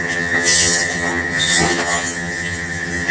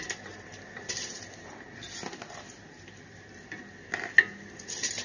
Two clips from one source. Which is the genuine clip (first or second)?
second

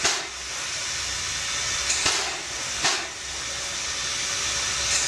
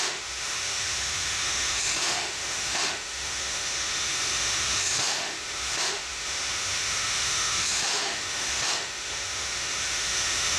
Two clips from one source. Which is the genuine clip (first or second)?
first